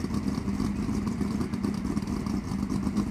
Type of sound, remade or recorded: recorded